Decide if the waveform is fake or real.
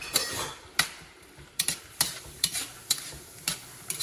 fake